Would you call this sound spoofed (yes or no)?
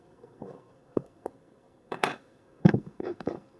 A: yes